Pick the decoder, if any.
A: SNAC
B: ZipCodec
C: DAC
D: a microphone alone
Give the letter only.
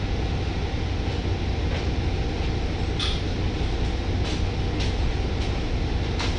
D